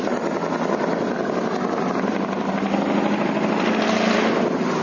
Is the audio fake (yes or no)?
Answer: no